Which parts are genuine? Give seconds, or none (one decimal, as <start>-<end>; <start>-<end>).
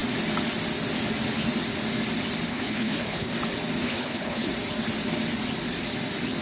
0.0-2.5; 3.3-3.8; 4.5-6.4